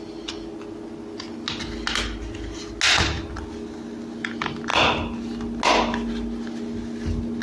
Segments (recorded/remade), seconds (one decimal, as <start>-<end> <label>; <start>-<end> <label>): 0.0-7.4 recorded